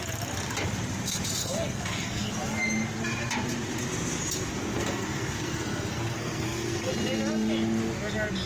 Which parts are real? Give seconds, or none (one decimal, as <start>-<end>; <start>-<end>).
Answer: 0.0-1.4; 2.3-4.6; 6.9-8.5